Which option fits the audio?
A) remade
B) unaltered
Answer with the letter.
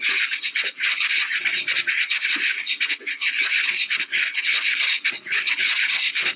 B